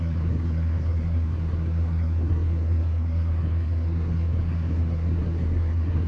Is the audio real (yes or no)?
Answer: no